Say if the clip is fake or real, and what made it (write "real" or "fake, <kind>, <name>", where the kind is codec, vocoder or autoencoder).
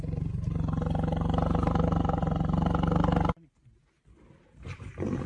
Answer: real